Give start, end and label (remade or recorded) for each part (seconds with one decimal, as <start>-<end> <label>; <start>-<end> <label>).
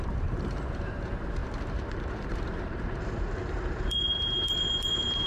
0.0-5.3 remade